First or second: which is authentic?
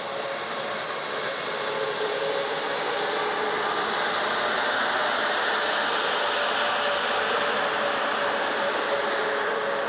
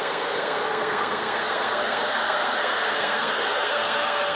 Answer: first